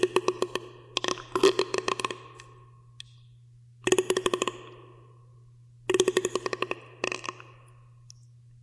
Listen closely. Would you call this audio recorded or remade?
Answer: recorded